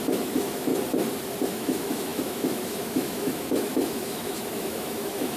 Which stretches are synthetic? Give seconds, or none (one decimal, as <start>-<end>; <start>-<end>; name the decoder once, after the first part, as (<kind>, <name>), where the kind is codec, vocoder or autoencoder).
0.0-0.7 (autoencoder, DAC-VAE); 1.5-5.4